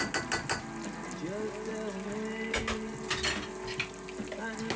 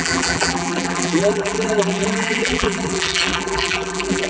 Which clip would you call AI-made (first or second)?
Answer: second